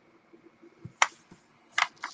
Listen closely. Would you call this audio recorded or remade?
recorded